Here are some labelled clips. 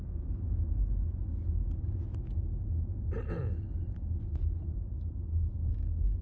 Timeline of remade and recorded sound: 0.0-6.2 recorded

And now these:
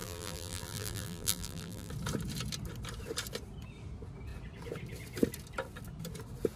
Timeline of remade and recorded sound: 0.0-1.9 remade; 1.9-6.6 recorded

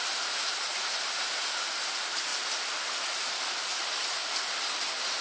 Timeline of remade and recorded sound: 0.0-2.3 remade; 2.3-3.1 recorded; 3.1-4.2 remade; 4.2-5.2 recorded

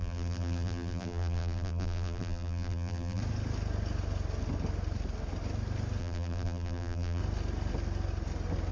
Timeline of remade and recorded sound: 0.0-3.2 remade; 3.2-6.0 recorded; 6.0-7.2 remade; 7.2-8.7 recorded

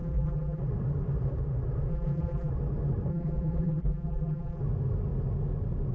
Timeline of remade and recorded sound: 0.0-0.6 remade; 0.6-1.9 recorded; 1.9-2.5 remade; 2.5-3.1 recorded; 3.1-4.6 remade; 4.6-5.9 recorded

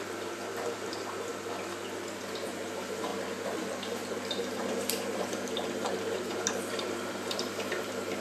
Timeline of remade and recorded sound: 0.0-1.3 remade; 1.3-2.2 recorded; 2.2-8.2 remade

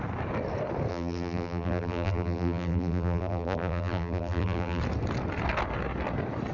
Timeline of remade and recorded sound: 0.0-0.9 recorded; 0.9-4.8 remade; 4.8-6.5 recorded